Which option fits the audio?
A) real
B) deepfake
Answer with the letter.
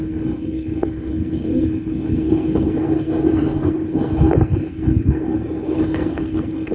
B